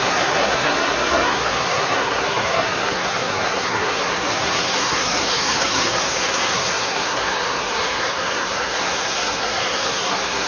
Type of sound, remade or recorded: remade